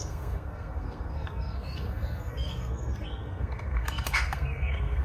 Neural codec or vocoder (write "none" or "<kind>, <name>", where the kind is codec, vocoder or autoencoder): codec, SNAC